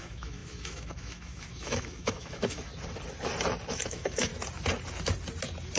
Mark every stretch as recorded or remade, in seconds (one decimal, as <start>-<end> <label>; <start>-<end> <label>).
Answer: 0.0-2.7 remade; 2.7-3.7 recorded; 3.7-4.3 remade; 4.3-5.8 recorded